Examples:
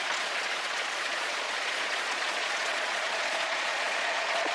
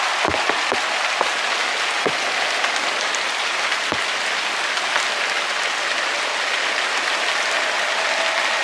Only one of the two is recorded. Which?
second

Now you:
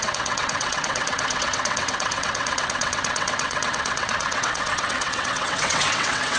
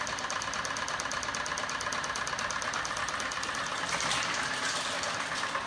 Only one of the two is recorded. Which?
second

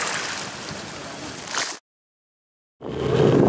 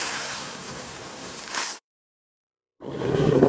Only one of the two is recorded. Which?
first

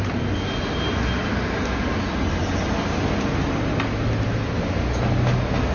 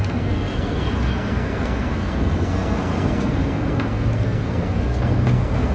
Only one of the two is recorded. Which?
first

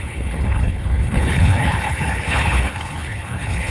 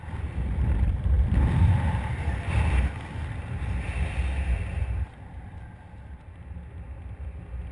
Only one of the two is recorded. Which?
second